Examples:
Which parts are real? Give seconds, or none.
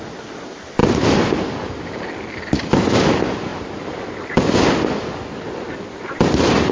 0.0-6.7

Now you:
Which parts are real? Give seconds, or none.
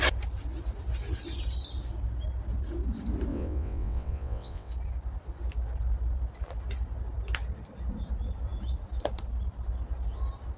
0.0-3.3; 4.7-10.6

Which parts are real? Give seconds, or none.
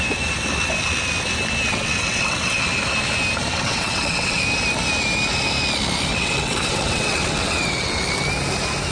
0.0-1.7; 2.6-3.5; 4.4-6.1; 8.0-8.9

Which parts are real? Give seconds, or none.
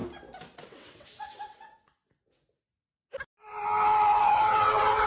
0.0-0.7; 2.0-4.2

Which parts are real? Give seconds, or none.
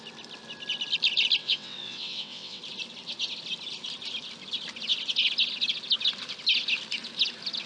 0.0-1.4; 2.6-7.7